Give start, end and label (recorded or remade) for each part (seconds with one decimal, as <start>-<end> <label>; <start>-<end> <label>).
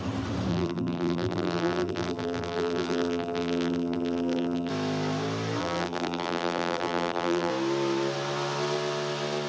0.0-0.5 recorded; 0.5-4.7 remade; 4.7-5.6 recorded; 5.6-7.5 remade; 7.5-9.5 recorded